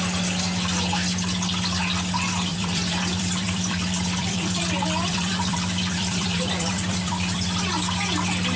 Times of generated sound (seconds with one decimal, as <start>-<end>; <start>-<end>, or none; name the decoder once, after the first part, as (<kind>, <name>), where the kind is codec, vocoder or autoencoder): 2.5-7.7 (vocoder, BigVGAN v2)